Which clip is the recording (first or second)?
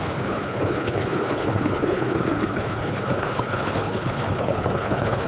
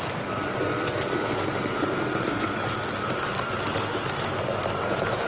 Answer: second